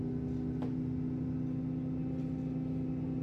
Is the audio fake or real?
real